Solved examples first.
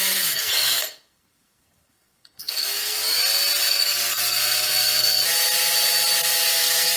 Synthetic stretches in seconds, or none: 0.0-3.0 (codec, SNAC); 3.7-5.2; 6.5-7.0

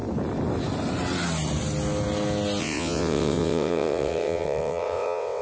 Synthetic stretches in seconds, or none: 2.6-5.4 (vocoder, WaveNeXt)

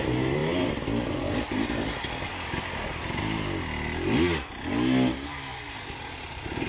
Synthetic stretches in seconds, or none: none

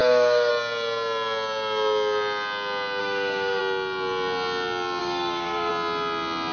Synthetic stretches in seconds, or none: 0.0-0.5 (codec, DAC); 3.0-3.6; 5.0-5.7

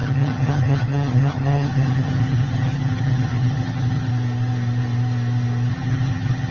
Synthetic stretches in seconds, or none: 0.0-4.1 (vocoder, HiFi-GAN); 5.7-6.5

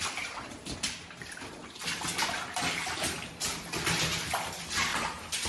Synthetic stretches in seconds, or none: 4.9-5.5 (vocoder, BigVGAN v2)

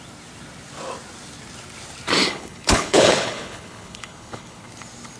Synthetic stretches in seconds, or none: 2.2-4.7 (codec, HILCodec)

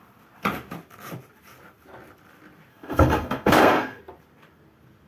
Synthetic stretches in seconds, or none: 2.7-4.0 (codec, SNAC)